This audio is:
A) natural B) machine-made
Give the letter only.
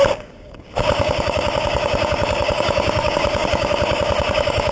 B